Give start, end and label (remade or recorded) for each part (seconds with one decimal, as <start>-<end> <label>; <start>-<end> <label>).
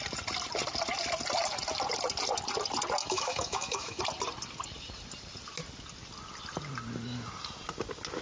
0.0-3.0 recorded; 3.0-4.0 remade; 4.0-8.2 recorded